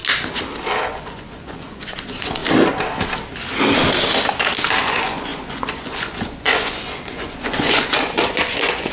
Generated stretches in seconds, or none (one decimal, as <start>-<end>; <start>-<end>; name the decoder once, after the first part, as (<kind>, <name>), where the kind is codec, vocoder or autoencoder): 0.9-2.4 (vocoder, Vocos); 4.8-8.9